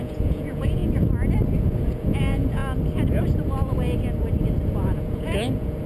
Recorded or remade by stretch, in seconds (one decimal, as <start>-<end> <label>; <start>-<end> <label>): 0.0-0.8 remade; 0.8-1.5 recorded; 1.5-2.6 remade; 2.6-4.7 recorded; 4.7-5.9 remade

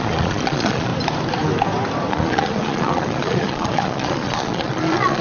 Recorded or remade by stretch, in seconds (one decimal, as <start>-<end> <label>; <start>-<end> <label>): 0.0-0.9 remade; 0.9-2.1 recorded; 2.1-5.2 remade

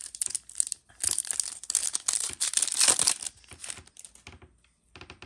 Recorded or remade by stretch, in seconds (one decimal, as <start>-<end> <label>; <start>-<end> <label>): 0.0-5.3 recorded